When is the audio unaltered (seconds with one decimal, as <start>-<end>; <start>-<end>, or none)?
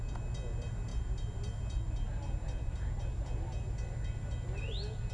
0.0-5.1